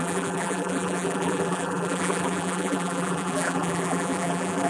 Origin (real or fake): fake